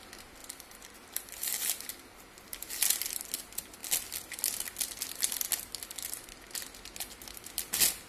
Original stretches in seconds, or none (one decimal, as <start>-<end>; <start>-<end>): 0.0-8.1

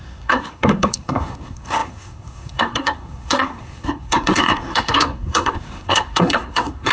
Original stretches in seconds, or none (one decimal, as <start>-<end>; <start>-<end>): none

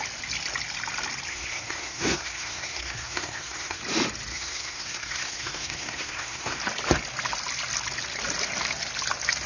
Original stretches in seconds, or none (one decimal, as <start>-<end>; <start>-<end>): 0.0-1.3; 3.8-4.3; 6.6-9.5

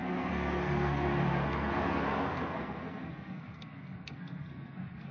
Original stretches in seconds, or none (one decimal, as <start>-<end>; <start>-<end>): none

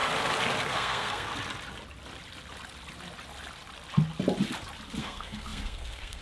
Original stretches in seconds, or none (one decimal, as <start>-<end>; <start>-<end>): 0.0-0.6; 1.3-5.0